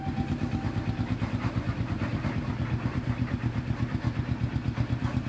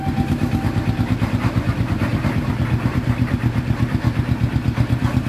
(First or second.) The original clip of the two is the first